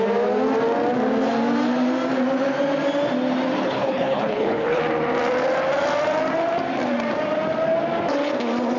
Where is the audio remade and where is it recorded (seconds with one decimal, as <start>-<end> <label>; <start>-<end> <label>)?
0.0-3.6 recorded; 3.6-4.8 remade; 4.8-8.8 recorded